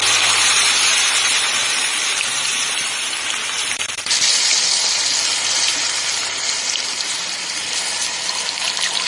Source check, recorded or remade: remade